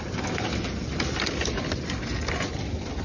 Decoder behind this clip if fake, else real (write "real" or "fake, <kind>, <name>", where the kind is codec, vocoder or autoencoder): real